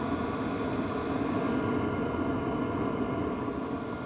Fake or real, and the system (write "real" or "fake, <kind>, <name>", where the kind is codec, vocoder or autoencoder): real